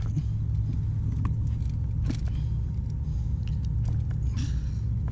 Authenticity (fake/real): real